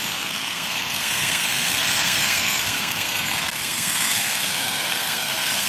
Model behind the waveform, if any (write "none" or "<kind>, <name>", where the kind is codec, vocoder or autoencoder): codec, SNAC